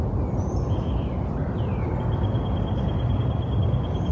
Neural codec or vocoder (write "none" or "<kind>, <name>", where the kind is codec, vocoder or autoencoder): none